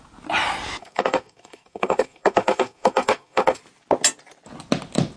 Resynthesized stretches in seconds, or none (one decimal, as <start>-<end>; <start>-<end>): 0.8-3.6